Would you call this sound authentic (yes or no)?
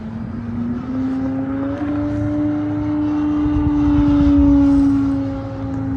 yes